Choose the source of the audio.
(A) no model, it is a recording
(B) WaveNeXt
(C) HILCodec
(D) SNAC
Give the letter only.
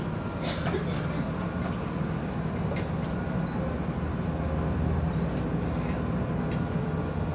A